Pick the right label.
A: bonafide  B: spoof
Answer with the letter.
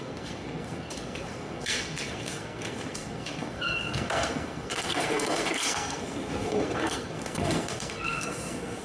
B